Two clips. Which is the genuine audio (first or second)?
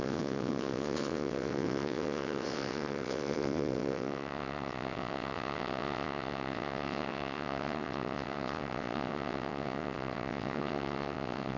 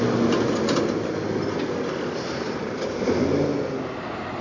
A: second